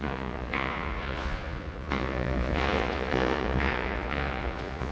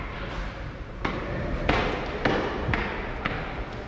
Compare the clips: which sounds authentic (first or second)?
second